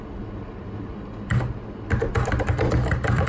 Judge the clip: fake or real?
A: real